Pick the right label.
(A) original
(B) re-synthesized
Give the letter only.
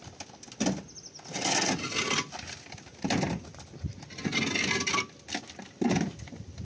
A